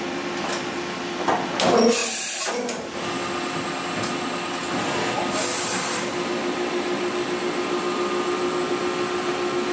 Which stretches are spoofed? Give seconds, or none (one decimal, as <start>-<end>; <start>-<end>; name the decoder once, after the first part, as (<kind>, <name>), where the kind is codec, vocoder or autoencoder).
2.0-2.9 (vocoder, BigVGAN v2)